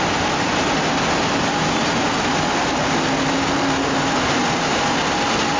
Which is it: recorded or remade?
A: recorded